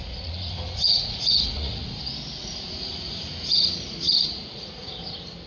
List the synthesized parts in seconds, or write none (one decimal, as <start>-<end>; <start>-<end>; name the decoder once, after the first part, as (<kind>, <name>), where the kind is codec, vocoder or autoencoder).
0.0-2.0 (vocoder, Vocos); 2.4-5.1